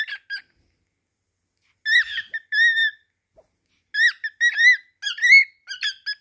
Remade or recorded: recorded